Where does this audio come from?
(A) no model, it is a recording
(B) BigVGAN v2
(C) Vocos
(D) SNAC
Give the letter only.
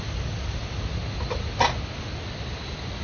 A